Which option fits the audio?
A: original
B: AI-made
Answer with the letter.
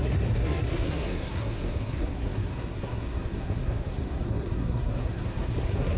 B